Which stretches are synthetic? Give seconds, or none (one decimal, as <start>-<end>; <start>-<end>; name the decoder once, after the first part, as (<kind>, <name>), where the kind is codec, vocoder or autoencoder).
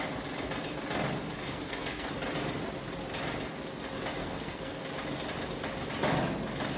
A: 1.4-2.1 (codec, SNAC); 4.2-4.8